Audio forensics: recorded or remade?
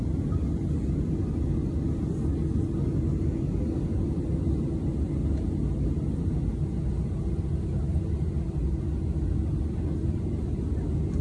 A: recorded